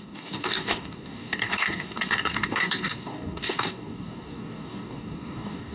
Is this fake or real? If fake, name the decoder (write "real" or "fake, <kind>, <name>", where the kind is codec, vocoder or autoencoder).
fake, codec, DAC